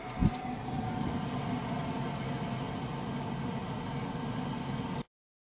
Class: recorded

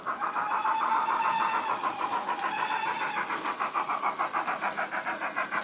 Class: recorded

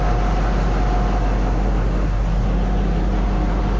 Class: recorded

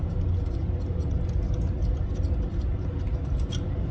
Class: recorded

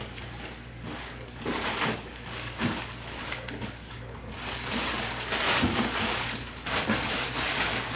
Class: remade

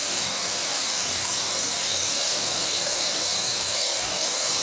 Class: remade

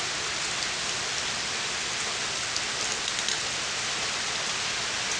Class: recorded